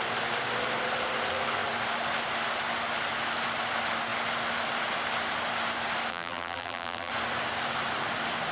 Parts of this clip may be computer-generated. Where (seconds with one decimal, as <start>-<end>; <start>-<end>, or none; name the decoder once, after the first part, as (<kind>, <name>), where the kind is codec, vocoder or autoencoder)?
6.1-7.1 (vocoder, BigVGAN v2)